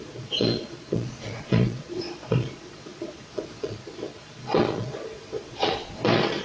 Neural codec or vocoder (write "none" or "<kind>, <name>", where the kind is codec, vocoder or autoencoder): vocoder, Vocos